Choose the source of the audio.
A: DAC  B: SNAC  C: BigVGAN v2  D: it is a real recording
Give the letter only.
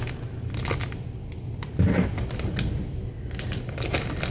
D